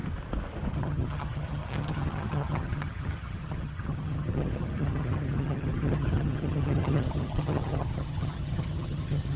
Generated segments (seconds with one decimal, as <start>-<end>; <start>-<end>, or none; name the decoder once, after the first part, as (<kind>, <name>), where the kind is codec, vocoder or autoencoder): 0.7-9.4 (vocoder, HiFi-GAN)